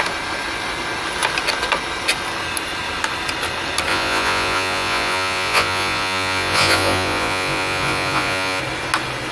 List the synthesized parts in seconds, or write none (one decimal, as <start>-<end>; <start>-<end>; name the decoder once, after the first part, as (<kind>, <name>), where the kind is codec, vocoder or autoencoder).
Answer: 3.9-8.6 (vocoder, Vocos)